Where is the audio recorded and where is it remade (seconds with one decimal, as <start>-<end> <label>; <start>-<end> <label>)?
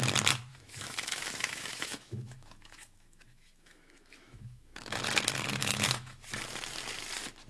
0.0-0.5 recorded; 0.5-5.0 remade; 5.0-5.6 recorded; 5.6-6.2 remade; 6.2-7.5 recorded